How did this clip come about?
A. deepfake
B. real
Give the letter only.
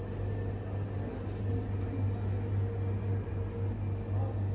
B